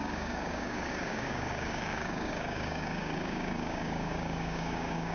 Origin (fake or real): fake